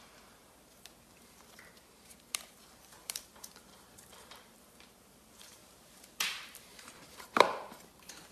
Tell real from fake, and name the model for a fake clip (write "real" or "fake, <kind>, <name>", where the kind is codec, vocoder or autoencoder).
fake, vocoder, BigVGAN v2